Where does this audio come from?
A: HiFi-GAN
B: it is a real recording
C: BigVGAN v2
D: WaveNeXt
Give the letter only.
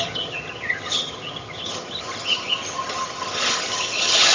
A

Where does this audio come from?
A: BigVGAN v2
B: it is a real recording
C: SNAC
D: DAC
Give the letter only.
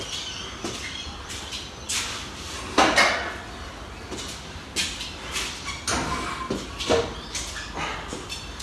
B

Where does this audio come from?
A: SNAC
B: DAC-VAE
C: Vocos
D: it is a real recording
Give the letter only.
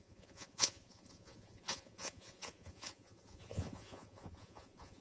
C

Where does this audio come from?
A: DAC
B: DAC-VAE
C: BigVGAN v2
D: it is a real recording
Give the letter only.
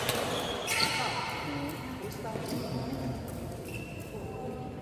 D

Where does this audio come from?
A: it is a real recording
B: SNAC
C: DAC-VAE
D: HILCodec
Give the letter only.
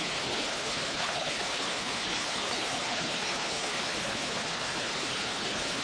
D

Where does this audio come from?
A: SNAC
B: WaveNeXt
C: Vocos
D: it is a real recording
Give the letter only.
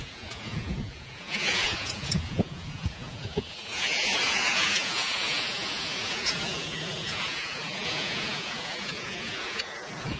C